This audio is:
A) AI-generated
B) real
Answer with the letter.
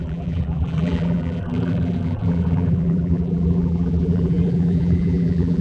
A